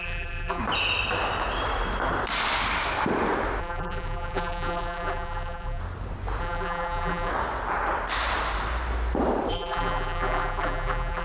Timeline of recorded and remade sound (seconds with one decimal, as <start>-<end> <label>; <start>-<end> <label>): 0.0-0.6 remade; 0.6-3.6 recorded; 3.6-5.8 remade; 5.8-6.4 recorded; 6.4-7.3 remade; 7.3-9.5 recorded; 9.5-11.2 remade